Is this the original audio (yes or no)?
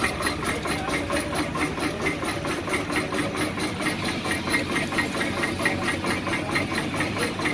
yes